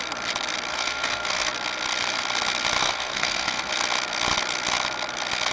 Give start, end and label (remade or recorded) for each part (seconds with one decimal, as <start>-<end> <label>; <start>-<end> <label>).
0.0-0.7 recorded; 0.7-1.5 remade; 1.5-2.8 recorded; 2.8-3.7 remade; 3.7-5.5 recorded